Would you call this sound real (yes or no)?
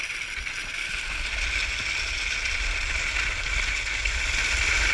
yes